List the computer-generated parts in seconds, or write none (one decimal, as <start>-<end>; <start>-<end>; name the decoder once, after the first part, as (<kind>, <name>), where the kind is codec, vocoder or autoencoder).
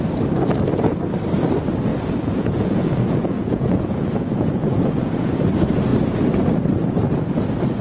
1.9-5.4 (vocoder, Vocos)